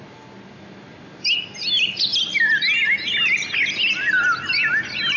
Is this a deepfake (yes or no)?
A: no